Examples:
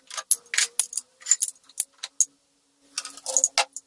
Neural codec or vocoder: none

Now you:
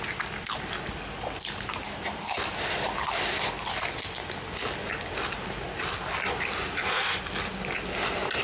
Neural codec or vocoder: none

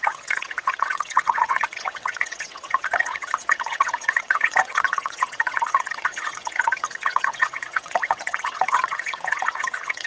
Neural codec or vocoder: vocoder, WaveNeXt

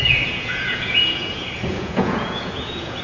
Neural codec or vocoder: vocoder, Vocos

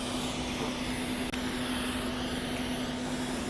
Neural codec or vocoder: none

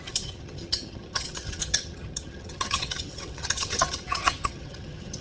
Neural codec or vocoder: vocoder, HiFi-GAN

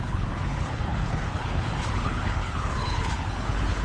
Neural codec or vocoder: codec, HILCodec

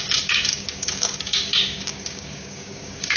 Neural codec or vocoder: codec, DAC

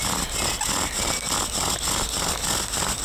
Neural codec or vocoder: none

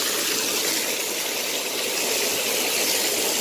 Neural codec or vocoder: none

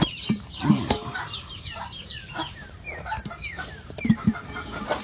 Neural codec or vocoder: vocoder, BigVGAN v2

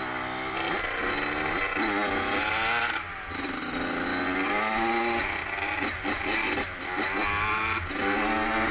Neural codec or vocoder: none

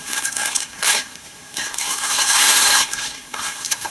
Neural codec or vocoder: codec, SNAC